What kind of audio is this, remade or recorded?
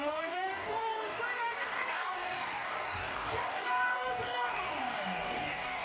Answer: remade